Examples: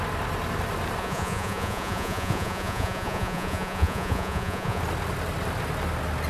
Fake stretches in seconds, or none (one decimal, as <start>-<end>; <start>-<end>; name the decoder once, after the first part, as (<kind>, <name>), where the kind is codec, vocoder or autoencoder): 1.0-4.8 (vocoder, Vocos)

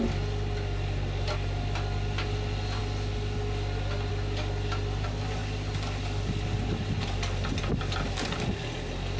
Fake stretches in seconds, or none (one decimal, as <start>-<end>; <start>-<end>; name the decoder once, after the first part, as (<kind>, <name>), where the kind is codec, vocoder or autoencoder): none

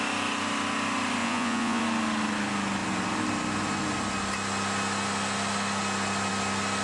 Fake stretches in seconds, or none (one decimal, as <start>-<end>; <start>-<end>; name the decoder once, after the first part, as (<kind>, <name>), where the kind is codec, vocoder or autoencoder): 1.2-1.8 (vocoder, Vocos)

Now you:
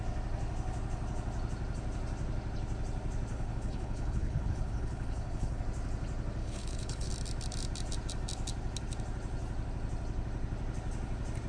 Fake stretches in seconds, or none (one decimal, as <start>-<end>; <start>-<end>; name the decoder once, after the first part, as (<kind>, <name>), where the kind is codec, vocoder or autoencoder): 3.3-5.6 (codec, HILCodec); 6.4-7.1

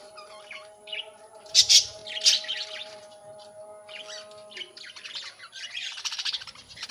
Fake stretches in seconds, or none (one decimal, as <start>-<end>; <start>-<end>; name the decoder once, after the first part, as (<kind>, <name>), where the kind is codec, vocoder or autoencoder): 0.0-2.0 (vocoder, BigVGAN v2); 5.7-6.9

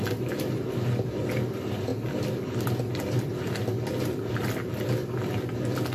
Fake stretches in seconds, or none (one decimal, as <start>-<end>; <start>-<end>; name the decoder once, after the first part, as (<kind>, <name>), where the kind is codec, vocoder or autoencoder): 1.9-5.3 (vocoder, BigVGAN v2)